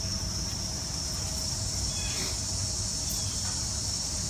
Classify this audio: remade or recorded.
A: recorded